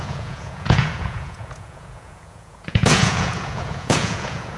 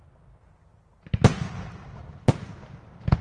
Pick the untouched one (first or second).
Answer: second